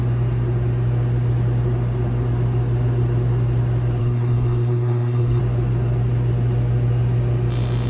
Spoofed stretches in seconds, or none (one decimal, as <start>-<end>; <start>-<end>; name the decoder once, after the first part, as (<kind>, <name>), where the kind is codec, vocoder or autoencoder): 4.0-5.4 (codec, SNAC)